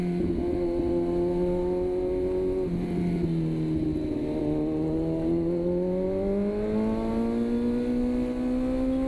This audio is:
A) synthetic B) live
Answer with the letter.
B